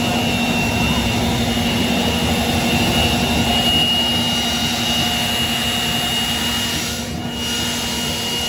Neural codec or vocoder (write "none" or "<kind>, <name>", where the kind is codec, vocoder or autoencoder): none